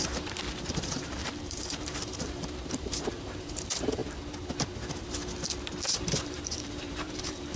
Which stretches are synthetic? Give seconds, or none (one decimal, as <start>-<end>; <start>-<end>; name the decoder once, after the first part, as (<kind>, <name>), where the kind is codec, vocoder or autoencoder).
0.0-4.0 (vocoder, BigVGAN v2); 5.8-7.6